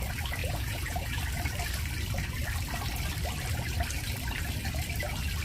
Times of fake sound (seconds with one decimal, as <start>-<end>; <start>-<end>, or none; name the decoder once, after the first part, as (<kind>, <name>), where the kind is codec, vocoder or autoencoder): 0.4-1.2 (vocoder, Vocos)